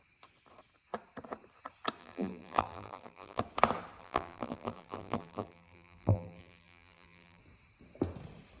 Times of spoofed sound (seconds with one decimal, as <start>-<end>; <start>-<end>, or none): 2.0-3.4; 4.0-7.4